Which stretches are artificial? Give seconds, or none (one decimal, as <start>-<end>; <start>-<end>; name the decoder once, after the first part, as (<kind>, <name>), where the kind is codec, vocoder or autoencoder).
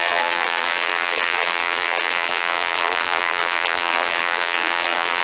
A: 0.0-5.2 (vocoder, BigVGAN v2)